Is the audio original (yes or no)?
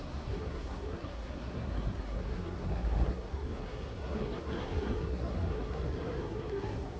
no